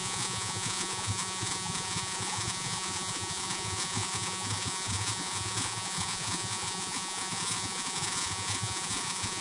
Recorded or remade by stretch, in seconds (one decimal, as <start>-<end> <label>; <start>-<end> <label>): 0.0-9.4 remade